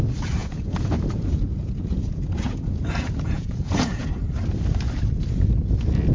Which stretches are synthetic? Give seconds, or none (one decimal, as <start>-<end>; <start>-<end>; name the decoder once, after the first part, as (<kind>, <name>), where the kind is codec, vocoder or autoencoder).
0.4-4.1 (vocoder, Vocos)

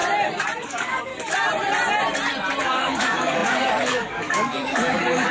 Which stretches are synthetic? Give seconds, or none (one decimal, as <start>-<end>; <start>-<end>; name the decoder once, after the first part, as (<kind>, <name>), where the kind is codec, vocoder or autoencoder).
0.6-1.1 (codec, DAC); 2.6-5.3

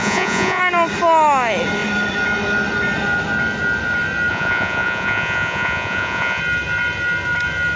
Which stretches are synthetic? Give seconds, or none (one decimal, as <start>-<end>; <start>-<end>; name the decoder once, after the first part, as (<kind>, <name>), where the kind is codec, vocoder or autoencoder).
0.0-0.6 (vocoder, Vocos); 4.3-6.4

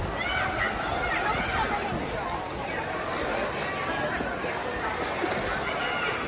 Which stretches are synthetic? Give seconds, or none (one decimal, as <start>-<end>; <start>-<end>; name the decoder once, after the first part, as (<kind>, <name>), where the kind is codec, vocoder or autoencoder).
4.6-6.3 (vocoder, BigVGAN v2)

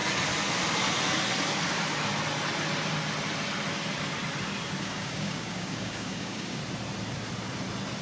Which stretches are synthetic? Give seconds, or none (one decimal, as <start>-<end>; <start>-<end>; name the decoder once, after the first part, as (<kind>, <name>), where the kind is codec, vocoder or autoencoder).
4.8-6.6 (codec, DAC)

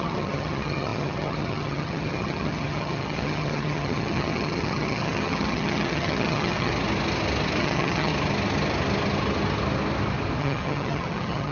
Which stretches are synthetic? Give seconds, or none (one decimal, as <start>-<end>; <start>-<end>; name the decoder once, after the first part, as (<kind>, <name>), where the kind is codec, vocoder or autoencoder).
0.0-6.7 (vocoder, HiFi-GAN); 7.6-8.1; 10.4-11.5

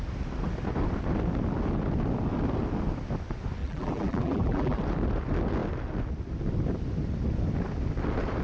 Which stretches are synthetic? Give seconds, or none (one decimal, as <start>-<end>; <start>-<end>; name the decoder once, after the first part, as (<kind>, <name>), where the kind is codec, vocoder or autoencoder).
3.6-4.8 (vocoder, BigVGAN v2)